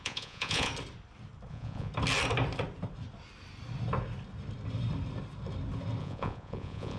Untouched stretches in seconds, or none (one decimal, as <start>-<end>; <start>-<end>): 0.7-1.5; 1.9-6.0